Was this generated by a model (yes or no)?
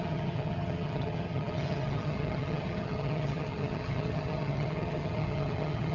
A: yes